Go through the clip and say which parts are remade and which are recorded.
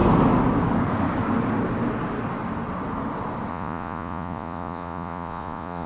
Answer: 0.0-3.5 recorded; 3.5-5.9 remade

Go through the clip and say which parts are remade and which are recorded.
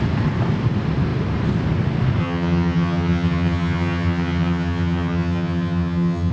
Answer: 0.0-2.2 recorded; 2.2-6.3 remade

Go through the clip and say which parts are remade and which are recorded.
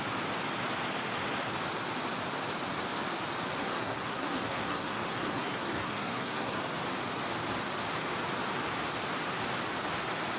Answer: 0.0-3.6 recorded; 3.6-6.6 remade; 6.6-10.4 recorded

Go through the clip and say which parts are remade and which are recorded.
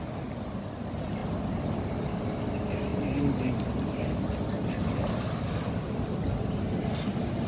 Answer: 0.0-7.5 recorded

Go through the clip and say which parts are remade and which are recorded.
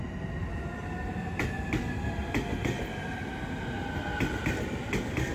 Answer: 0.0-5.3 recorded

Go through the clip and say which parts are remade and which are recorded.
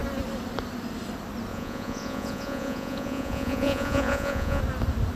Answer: 0.0-1.5 recorded; 1.5-4.6 remade; 4.6-5.2 recorded